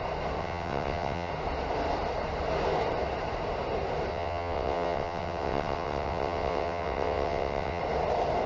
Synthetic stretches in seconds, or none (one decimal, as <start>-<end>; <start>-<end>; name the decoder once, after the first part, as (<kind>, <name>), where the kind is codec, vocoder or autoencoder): 0.4-1.3 (vocoder, WaveNeXt); 4.1-7.8